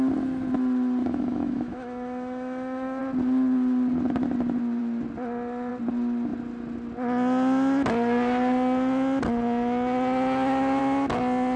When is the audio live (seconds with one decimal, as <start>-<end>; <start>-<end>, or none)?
0.0-1.0; 3.0-11.6